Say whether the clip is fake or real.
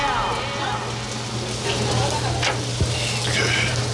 real